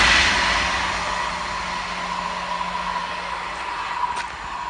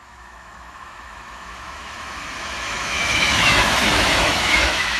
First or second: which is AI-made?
second